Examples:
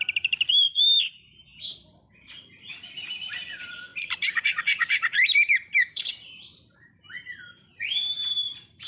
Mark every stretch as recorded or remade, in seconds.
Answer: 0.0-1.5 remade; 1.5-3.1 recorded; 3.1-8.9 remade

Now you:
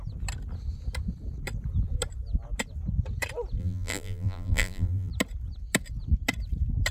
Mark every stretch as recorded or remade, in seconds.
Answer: 0.0-3.6 recorded; 3.6-5.1 remade; 5.1-6.9 recorded

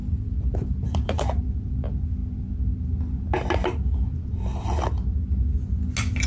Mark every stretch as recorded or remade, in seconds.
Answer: 0.0-1.4 remade; 1.4-6.3 recorded

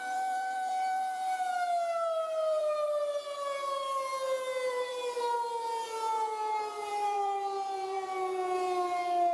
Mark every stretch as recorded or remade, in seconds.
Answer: 0.0-4.1 remade; 4.1-4.7 recorded; 4.7-9.3 remade